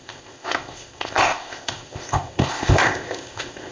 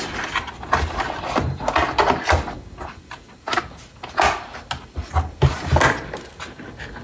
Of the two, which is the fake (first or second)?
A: first